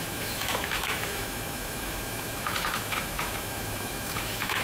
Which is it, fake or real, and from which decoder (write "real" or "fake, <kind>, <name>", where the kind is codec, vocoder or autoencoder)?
fake, autoencoder, DAC-VAE